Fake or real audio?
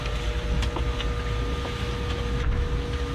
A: real